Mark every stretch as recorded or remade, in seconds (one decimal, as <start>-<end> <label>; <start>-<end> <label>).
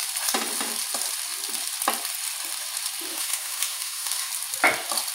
0.0-3.1 recorded; 3.1-4.3 remade; 4.3-5.1 recorded